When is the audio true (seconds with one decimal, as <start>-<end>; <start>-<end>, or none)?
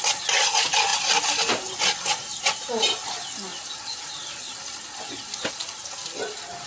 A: 0.0-6.7